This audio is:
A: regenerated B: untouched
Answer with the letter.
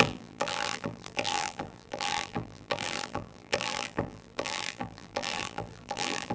A